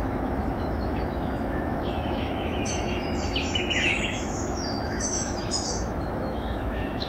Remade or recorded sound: remade